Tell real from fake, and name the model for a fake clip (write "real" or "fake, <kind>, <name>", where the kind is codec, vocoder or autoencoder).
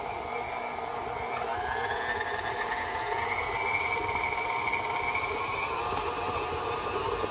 real